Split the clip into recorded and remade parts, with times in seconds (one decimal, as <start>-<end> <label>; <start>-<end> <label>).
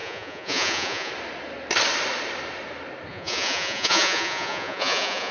0.0-1.1 remade; 1.1-3.1 recorded; 3.1-5.3 remade